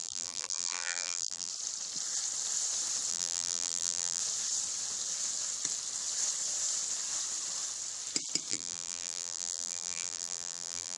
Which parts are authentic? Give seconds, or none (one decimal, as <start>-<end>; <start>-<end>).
1.5-3.1; 4.2-8.5